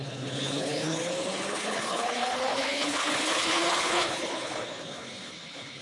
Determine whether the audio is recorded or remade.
remade